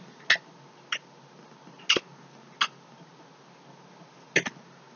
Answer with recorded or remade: recorded